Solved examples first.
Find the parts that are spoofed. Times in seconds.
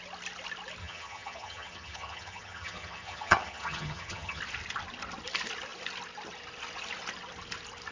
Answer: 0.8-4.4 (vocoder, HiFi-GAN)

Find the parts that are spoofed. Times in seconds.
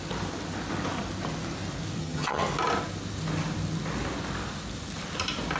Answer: 2.0-2.5 (vocoder, HiFi-GAN)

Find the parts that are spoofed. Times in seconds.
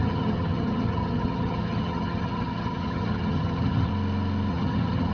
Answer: 0.0-3.9 (vocoder, HiFi-GAN); 4.5-5.1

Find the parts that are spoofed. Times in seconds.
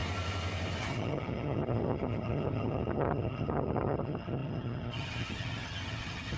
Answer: 0.8-6.4 (vocoder, HiFi-GAN)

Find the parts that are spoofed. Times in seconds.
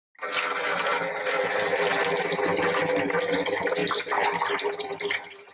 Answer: none